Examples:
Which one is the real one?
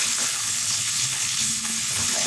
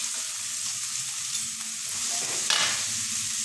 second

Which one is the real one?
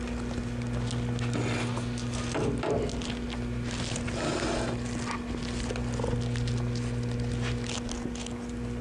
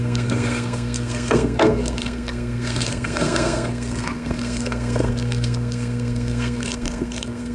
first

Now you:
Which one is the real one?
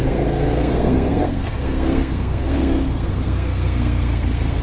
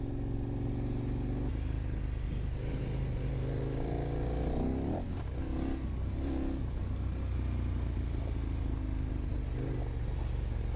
second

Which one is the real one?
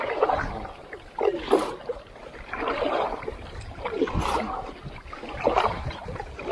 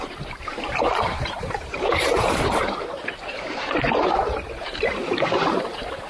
first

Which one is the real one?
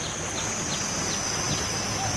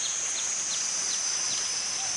second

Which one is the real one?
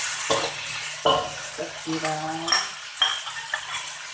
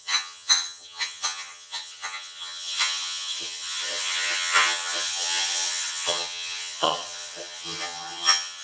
first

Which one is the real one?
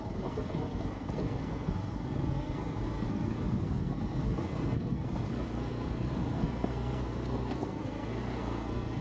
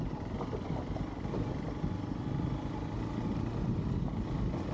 second